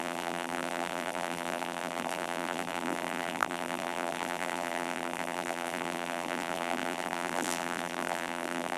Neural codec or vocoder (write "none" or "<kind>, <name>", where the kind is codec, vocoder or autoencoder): vocoder, BigVGAN v2